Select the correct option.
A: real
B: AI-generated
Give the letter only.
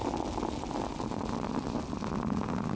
A